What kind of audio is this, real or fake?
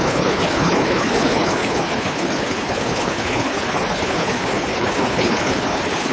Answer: fake